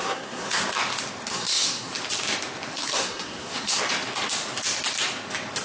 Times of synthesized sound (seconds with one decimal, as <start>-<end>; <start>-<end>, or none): 0.0-0.6; 1.3-1.9; 2.7-3.8

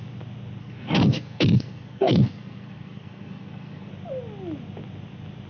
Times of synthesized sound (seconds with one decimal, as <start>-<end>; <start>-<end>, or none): 0.6-3.9